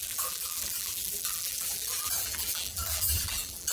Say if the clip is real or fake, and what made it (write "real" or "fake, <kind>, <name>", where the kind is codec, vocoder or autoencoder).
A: fake, vocoder, BigVGAN v2